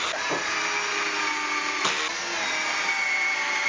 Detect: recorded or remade recorded